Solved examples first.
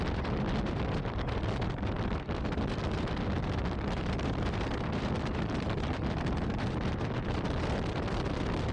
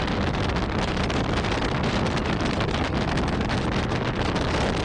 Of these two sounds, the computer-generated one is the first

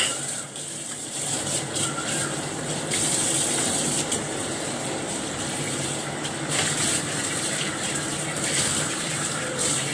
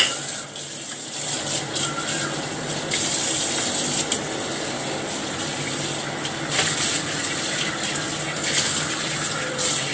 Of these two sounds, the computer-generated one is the first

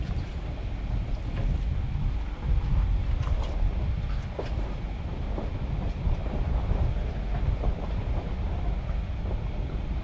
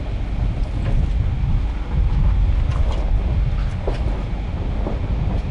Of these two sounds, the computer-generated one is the first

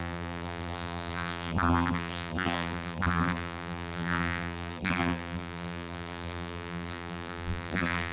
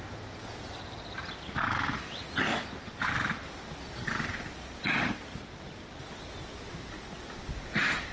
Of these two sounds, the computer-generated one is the first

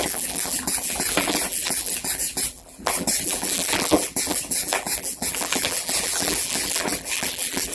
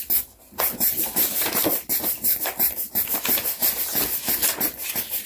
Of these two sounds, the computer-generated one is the first